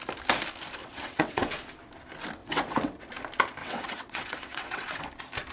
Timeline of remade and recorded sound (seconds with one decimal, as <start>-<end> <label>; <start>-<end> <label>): 0.0-0.8 recorded; 0.8-1.5 remade; 1.5-2.4 recorded; 2.4-3.1 remade; 3.1-3.6 recorded; 3.6-5.1 remade; 5.1-5.5 recorded